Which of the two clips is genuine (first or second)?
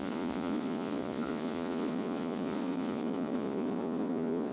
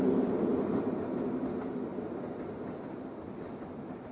second